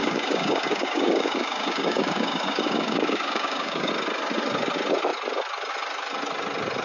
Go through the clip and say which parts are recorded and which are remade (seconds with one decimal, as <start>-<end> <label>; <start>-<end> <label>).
0.0-3.9 remade; 3.9-6.8 recorded

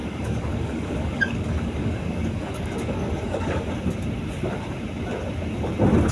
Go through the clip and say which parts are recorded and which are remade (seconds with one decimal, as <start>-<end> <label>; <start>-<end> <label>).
0.0-3.7 remade; 3.7-6.1 recorded

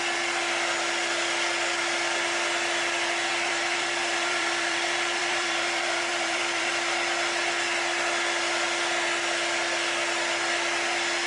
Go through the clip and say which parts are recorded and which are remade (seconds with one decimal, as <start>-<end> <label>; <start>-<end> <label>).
0.0-3.3 recorded; 3.3-6.7 remade; 6.7-11.3 recorded